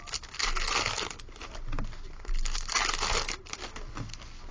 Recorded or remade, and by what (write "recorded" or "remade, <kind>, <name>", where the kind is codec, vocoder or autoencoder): recorded